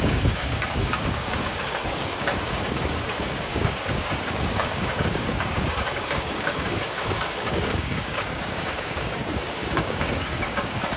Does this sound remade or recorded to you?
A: remade